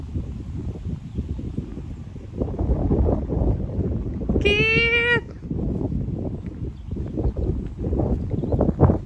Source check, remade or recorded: recorded